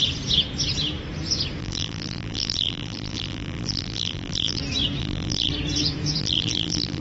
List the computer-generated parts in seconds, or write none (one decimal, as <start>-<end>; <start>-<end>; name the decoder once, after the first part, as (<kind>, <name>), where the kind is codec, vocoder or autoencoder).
1.6-4.6 (vocoder, BigVGAN v2); 5.0-5.5; 6.2-7.0